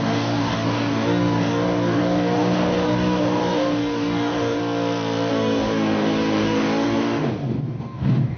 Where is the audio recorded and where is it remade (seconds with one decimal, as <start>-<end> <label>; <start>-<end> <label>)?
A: 0.0-4.6 remade; 4.6-5.3 recorded; 5.3-8.4 remade